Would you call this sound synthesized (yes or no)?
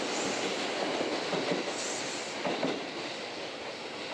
no